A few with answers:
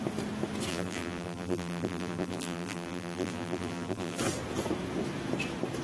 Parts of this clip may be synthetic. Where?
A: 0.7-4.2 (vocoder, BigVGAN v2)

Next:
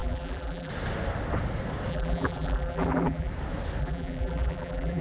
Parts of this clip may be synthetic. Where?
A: 0.0-0.7 (vocoder, BigVGAN v2); 1.9-3.3; 3.8-5.0

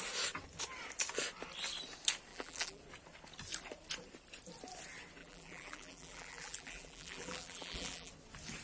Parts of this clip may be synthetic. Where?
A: 2.3-2.8 (vocoder, BigVGAN v2); 5.2-8.1

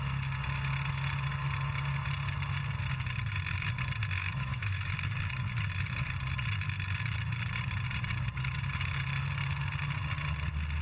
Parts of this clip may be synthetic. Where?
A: 4.2-4.9 (autoencoder, DAC-VAE)

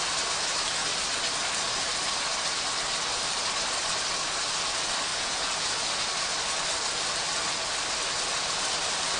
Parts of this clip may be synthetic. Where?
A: 5.1-5.8 (vocoder, Vocos)

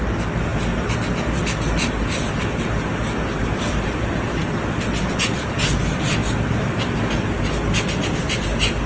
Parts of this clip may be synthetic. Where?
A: none